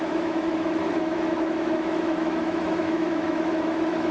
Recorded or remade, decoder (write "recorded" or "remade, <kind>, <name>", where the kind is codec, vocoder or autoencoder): remade, autoencoder, DAC-VAE